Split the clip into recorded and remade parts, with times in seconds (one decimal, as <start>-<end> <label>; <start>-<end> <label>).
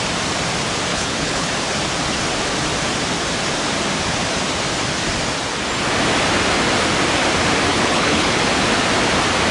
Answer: 0.0-0.9 recorded; 0.9-1.5 remade; 1.5-7.7 recorded; 7.7-8.4 remade; 8.4-9.5 recorded